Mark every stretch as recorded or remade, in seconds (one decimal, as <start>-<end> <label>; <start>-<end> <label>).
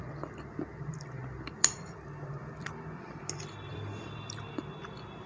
0.0-0.9 recorded; 0.9-3.2 remade; 3.2-3.7 recorded; 3.7-5.3 remade